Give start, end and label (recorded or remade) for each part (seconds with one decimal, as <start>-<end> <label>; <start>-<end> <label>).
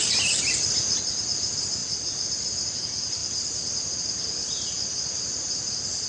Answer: 0.0-1.8 recorded; 1.8-2.3 remade; 2.3-3.2 recorded; 3.2-3.7 remade; 3.7-6.1 recorded